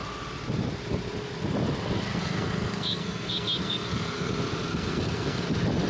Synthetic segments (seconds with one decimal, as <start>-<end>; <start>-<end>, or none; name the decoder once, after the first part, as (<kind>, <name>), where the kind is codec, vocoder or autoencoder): 2.1-4.3 (codec, SNAC); 4.7-5.4

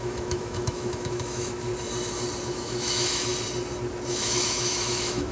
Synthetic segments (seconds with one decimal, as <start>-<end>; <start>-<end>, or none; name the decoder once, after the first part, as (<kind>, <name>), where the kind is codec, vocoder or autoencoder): 0.0-1.7 (autoencoder, DAC-VAE); 2.5-3.3; 4.1-5.3

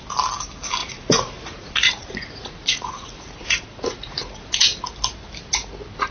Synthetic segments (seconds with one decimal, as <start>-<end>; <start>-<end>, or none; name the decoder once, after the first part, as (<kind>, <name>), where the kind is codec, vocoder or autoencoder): 0.8-4.5 (vocoder, Vocos)